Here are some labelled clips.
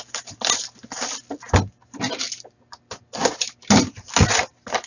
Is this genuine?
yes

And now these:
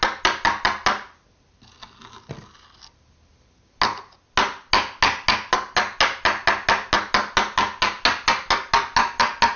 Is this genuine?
yes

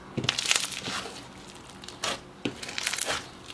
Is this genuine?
yes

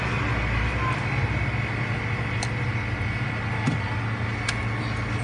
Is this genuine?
yes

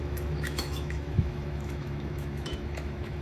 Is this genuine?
no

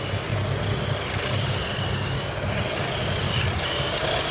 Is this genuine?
yes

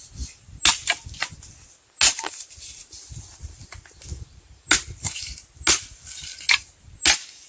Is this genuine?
yes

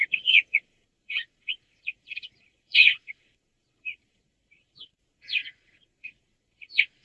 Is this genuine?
no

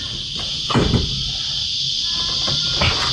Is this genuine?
yes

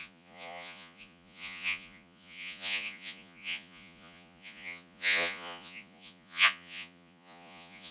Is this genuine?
no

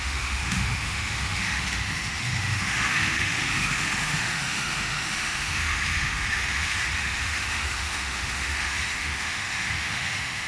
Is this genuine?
no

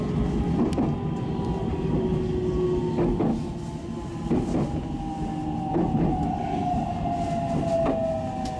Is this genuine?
yes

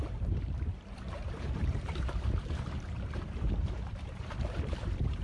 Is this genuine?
no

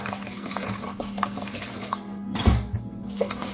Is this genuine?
no